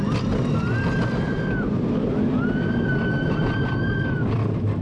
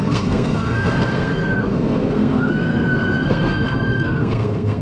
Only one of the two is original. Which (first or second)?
first